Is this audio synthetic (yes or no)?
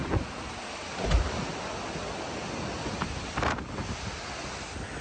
no